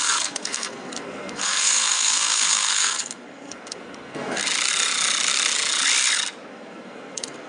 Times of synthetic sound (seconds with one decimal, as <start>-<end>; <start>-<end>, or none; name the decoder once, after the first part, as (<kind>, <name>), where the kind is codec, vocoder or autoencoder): 0.0-4.4 (codec, SNAC); 6.5-7.5